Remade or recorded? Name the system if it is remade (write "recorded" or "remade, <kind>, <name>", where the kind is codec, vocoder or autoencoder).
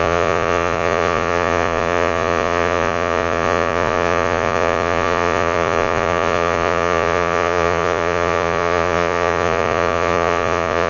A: remade, vocoder, Vocos